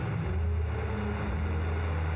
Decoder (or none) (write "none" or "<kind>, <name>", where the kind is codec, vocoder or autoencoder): none